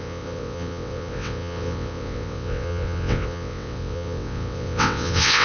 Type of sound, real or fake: fake